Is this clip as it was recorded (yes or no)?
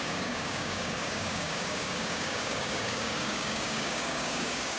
no